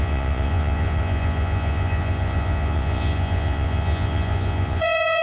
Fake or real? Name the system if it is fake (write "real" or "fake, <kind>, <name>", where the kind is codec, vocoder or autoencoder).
fake, vocoder, Vocos